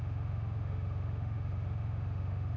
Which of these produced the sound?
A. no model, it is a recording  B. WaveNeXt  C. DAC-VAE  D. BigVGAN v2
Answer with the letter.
C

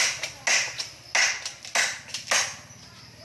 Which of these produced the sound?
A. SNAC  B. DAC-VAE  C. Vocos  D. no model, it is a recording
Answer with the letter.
D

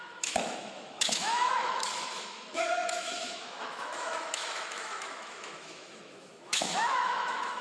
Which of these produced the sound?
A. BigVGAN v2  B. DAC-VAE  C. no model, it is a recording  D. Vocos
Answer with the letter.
B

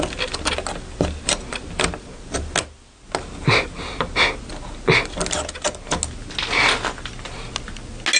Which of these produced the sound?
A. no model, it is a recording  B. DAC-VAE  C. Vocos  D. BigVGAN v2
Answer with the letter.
A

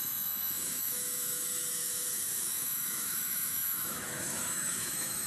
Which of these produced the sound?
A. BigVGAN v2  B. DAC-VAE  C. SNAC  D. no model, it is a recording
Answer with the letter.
B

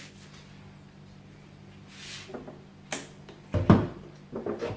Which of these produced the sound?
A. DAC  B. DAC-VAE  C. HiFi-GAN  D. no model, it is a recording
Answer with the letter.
D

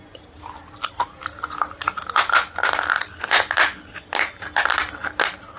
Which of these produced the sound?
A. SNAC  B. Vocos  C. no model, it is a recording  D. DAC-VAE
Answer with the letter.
C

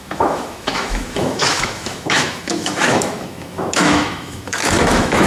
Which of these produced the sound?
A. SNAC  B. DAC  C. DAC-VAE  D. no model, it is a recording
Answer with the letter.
C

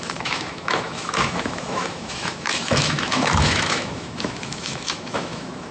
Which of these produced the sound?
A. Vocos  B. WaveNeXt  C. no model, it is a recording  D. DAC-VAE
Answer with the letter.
D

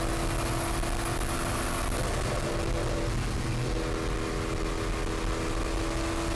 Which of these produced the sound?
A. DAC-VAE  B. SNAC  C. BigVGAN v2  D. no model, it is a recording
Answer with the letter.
D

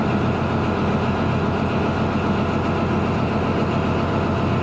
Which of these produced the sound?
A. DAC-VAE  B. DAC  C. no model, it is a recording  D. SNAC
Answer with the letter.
C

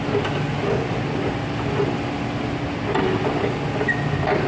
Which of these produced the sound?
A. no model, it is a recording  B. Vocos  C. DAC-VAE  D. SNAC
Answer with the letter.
A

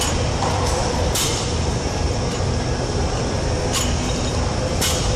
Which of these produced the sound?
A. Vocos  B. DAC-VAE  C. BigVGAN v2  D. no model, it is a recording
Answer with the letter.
D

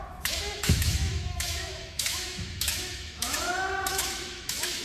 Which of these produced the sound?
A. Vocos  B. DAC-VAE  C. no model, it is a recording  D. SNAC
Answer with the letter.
B